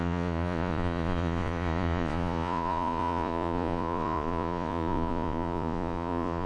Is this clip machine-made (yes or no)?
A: yes